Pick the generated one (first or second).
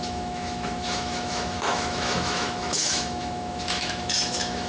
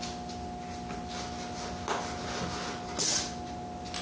first